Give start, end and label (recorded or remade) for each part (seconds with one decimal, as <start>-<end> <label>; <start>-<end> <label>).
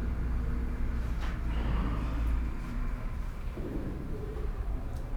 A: 0.0-3.1 recorded; 3.1-5.2 remade